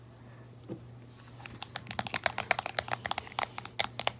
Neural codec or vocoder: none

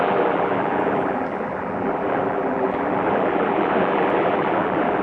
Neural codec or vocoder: vocoder, BigVGAN v2